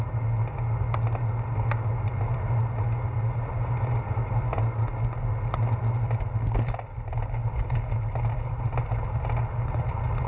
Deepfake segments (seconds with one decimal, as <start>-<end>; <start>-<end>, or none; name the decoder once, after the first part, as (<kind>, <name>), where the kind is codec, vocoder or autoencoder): none